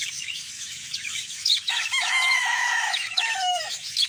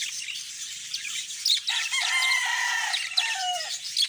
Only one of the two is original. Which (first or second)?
second